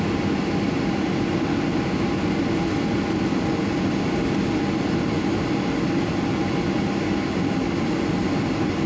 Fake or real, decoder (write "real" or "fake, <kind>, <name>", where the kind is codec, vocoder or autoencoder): real